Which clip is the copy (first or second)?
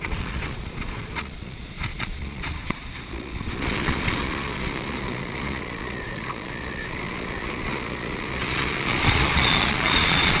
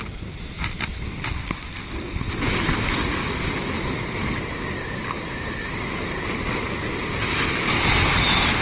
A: first